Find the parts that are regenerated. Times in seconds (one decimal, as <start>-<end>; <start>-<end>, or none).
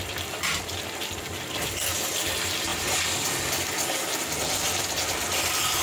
none